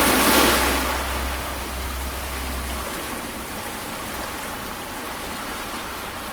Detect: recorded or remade recorded